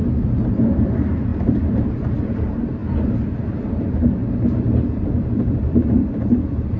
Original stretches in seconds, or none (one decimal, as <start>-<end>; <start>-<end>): 2.8-3.7; 4.2-4.9